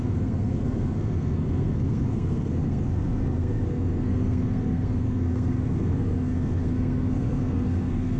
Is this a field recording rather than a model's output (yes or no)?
no